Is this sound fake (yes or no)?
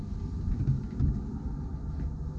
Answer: no